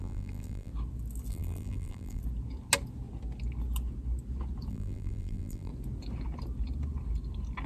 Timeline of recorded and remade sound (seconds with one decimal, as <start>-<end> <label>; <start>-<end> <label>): 0.0-0.7 remade; 0.7-1.3 recorded; 1.3-2.2 remade; 2.2-4.7 recorded; 4.7-5.7 remade; 5.7-7.7 recorded

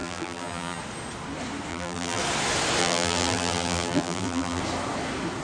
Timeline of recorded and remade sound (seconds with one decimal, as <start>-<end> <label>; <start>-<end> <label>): 0.0-0.8 remade; 0.8-1.7 recorded; 1.7-2.2 remade; 2.2-2.8 recorded; 2.8-4.6 remade; 4.6-5.4 recorded

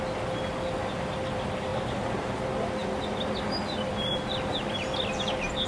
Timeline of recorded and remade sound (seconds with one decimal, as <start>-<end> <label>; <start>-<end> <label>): 0.0-1.7 recorded; 1.7-2.4 remade; 2.4-5.7 recorded

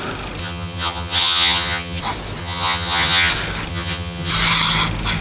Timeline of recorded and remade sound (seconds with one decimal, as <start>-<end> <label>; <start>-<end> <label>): 0.0-0.4 recorded; 0.4-2.0 remade; 2.0-2.4 recorded; 2.4-3.3 remade; 3.3-3.7 recorded; 3.7-4.3 remade; 4.3-5.2 recorded

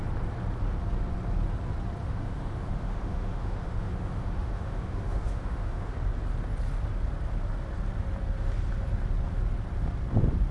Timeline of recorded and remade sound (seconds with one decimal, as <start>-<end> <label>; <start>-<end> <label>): 0.0-2.0 recorded; 2.0-5.9 remade; 5.9-10.5 recorded

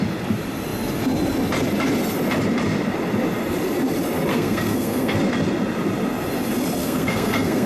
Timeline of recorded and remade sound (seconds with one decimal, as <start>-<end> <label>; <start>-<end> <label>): 0.0-4.3 recorded; 4.3-5.2 remade; 5.2-6.8 recorded; 6.8-7.7 remade

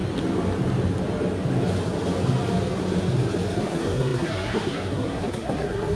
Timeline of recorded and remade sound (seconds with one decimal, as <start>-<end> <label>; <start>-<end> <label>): 0.0-3.6 recorded; 3.6-6.0 remade